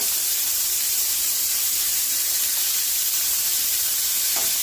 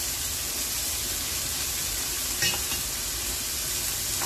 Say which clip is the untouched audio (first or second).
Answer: second